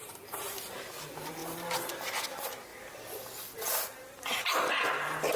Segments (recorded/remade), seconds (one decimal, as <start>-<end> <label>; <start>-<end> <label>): 0.0-2.7 remade; 2.7-3.7 recorded; 3.7-5.4 remade

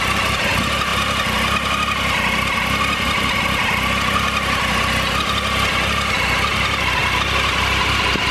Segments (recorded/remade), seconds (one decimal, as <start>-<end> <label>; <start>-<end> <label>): 0.0-8.3 recorded

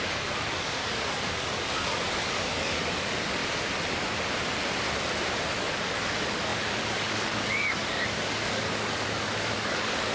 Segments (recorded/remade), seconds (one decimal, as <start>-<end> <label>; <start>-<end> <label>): 0.0-3.4 remade; 3.4-5.4 recorded; 5.4-10.1 remade

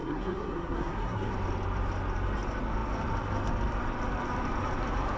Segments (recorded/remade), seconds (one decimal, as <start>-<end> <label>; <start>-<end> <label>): 0.0-1.3 remade; 1.3-5.2 recorded

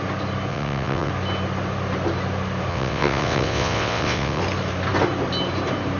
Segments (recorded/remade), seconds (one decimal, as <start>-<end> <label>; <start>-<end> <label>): 0.0-0.5 recorded; 0.5-1.1 remade; 1.1-2.7 recorded; 2.7-4.4 remade; 4.4-6.0 recorded

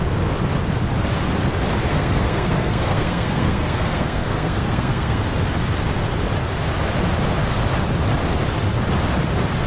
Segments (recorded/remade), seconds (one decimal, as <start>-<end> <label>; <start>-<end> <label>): 0.0-1.9 recorded; 1.9-5.2 remade; 5.2-9.7 recorded